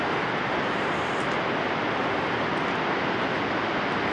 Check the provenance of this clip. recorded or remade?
recorded